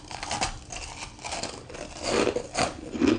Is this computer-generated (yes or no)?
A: no